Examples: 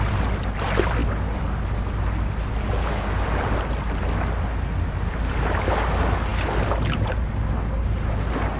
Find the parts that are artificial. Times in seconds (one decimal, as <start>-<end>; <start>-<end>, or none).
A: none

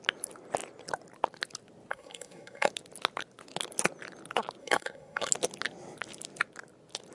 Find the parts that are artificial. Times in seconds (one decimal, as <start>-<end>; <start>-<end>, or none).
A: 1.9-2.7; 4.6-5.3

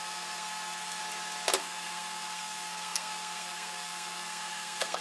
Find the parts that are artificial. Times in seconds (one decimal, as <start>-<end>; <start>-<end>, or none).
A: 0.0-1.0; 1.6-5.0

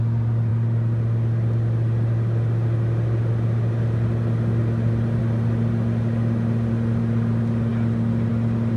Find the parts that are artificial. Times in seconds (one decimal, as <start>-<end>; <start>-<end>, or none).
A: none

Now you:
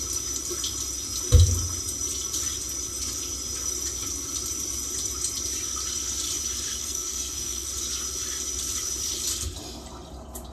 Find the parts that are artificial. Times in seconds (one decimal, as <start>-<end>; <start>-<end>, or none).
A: 6.8-7.7